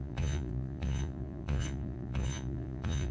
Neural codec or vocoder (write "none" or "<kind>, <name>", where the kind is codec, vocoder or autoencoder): vocoder, Vocos